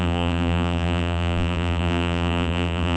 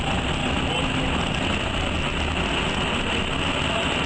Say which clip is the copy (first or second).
first